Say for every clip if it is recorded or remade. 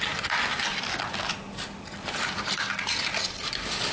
recorded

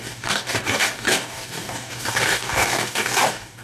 remade